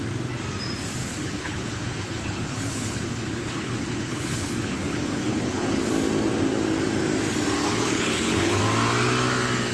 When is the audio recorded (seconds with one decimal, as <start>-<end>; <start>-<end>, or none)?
0.0-1.0; 5.9-7.6; 8.6-9.7

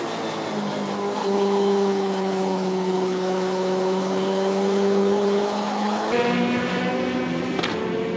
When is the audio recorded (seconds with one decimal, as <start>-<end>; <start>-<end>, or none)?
0.0-1.2; 6.1-8.2

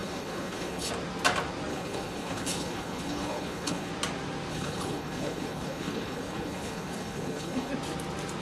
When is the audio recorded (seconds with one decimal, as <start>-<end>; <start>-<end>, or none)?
0.9-1.7; 3.9-4.5; 7.7-8.4

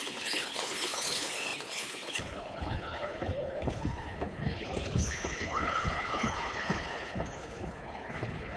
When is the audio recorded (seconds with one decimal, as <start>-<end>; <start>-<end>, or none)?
none

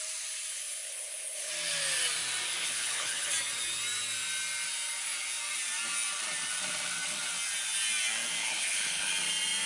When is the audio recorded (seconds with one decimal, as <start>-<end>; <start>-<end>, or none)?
0.0-0.5; 1.5-2.6; 3.3-8.4; 9.1-9.7

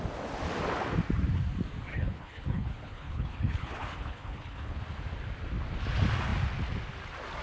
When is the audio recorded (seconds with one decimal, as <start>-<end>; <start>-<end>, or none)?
0.0-1.9; 4.8-7.4

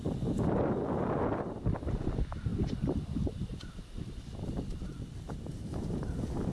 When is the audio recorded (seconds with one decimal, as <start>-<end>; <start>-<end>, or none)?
0.0-6.5